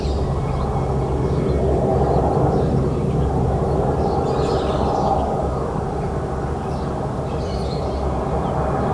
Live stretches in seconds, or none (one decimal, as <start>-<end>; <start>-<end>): 0.0-8.9